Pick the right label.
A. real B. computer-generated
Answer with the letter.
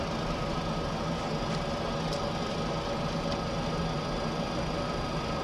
A